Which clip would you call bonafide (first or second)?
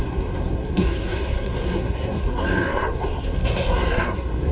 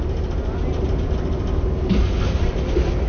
second